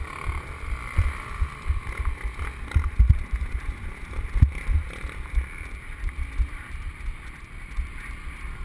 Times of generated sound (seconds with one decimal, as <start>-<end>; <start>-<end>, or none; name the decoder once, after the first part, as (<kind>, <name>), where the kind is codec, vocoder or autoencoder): none